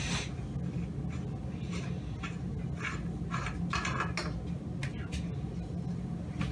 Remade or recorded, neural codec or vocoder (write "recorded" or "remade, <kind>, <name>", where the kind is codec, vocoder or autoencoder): recorded